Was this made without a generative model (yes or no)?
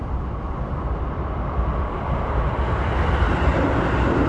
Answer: yes